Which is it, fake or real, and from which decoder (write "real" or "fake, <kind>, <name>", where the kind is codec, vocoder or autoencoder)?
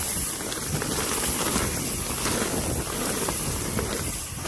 real